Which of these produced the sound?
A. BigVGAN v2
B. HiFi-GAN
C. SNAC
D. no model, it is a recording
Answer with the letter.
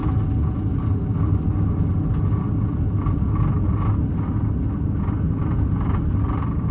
D